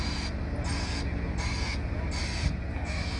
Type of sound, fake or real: real